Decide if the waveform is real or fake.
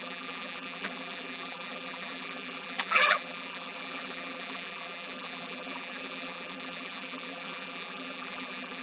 fake